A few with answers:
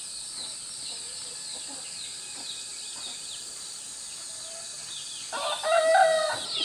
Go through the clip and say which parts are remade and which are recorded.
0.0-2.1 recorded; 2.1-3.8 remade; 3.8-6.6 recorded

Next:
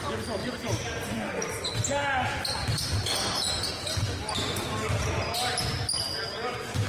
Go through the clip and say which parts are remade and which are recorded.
0.0-0.4 recorded; 0.4-1.7 remade; 1.7-6.9 recorded